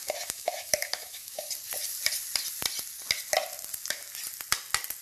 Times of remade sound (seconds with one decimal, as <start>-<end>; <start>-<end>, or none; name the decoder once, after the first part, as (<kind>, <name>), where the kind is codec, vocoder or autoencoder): 0.0-1.5 (autoencoder, DAC-VAE)